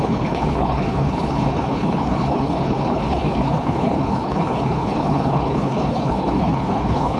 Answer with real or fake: fake